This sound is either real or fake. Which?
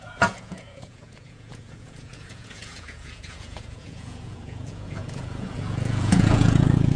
fake